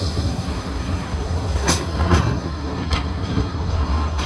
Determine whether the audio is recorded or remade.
remade